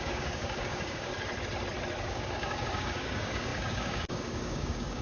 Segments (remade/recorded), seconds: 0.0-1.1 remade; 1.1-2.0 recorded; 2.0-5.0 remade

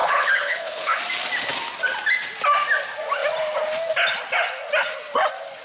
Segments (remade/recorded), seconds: 0.0-1.0 remade; 1.0-5.6 recorded